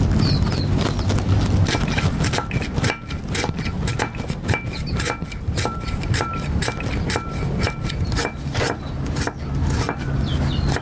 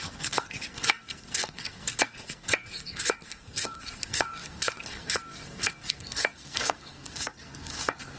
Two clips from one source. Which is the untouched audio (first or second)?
first